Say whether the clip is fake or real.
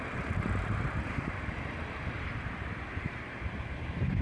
fake